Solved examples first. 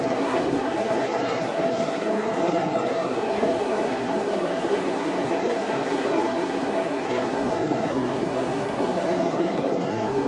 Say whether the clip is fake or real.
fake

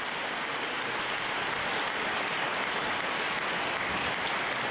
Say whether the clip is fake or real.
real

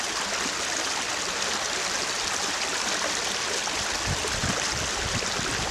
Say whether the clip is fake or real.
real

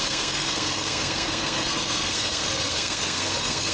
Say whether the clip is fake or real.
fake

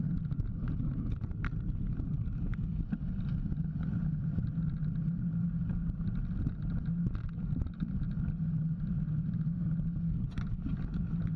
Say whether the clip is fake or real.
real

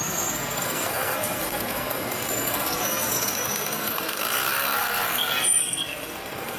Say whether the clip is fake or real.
fake